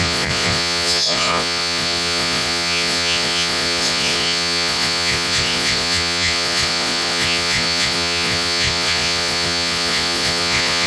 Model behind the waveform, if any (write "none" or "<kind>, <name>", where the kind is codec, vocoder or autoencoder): vocoder, Vocos